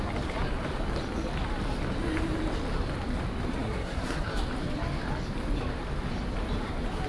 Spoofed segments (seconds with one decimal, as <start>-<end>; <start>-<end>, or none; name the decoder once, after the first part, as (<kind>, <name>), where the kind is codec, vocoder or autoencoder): 3.6-4.3 (codec, SNAC)